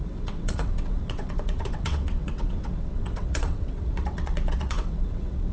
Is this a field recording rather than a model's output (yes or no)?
no